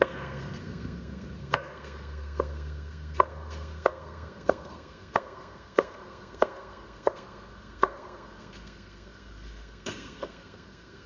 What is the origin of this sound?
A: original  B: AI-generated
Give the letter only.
B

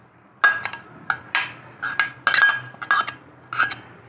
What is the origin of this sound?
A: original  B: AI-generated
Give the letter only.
A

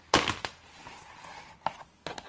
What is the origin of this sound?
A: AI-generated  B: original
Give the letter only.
B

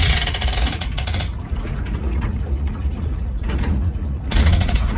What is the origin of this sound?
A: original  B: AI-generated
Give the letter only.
B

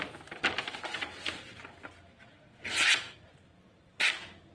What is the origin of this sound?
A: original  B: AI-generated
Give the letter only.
A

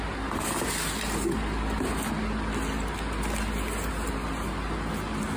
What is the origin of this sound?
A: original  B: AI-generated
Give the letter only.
A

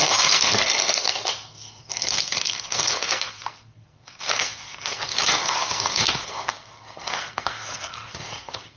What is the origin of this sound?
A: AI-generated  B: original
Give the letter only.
A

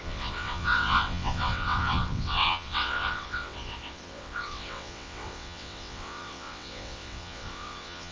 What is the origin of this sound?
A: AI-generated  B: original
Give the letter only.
A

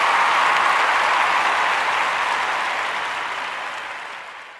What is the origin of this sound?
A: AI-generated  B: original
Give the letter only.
B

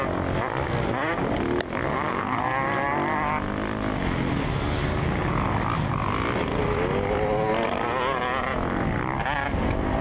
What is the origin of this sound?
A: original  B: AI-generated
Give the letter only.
A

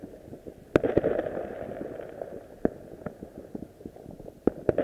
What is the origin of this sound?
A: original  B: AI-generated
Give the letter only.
A